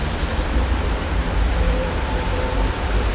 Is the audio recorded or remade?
remade